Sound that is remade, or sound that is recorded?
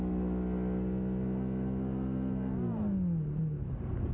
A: recorded